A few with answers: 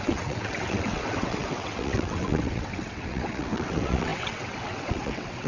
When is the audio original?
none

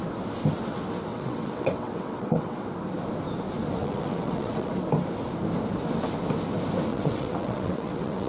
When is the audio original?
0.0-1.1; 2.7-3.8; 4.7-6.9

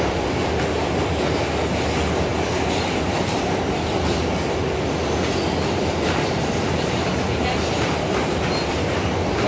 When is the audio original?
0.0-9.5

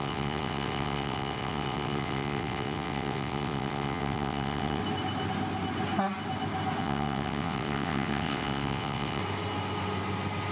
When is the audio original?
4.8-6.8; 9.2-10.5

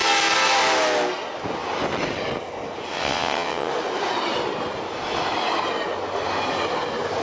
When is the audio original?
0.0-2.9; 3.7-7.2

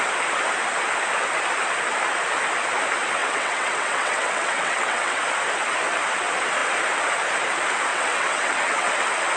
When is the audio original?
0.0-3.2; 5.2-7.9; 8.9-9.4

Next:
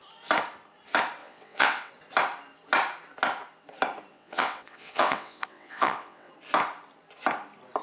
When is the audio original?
0.0-1.2; 1.9-4.1; 6.3-7.8